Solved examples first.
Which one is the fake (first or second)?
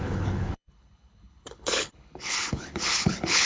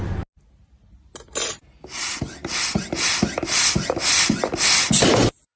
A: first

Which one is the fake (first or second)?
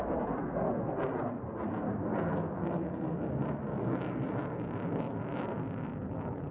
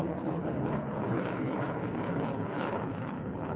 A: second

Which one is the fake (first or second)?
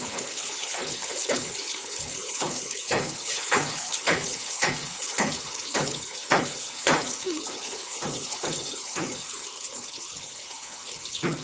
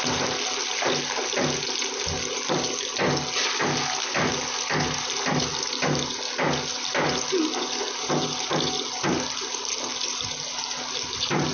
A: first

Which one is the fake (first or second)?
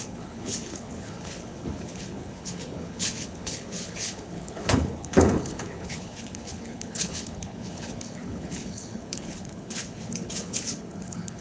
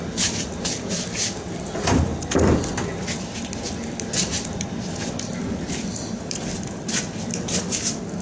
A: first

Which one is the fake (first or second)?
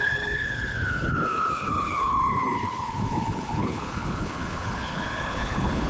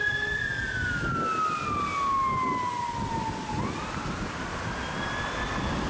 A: first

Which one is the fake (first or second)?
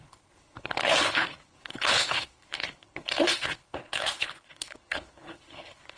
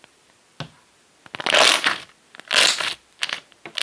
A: first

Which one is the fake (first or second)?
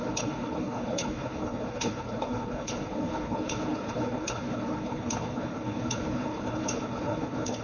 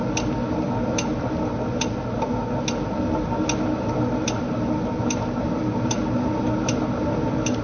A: first